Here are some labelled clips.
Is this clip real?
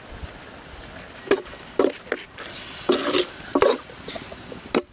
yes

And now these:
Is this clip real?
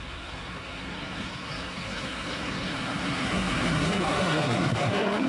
no